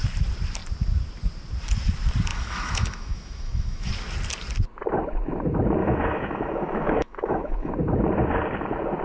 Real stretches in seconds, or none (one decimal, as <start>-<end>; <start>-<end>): 0.0-2.3; 3.9-5.8; 7.7-9.0